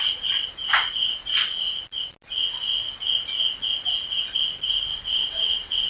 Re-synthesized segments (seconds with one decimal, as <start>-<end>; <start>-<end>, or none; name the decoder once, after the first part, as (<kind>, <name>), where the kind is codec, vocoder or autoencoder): 4.9-5.9 (vocoder, WaveNeXt)